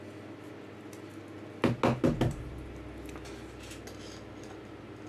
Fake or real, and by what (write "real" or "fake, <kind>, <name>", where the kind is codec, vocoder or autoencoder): real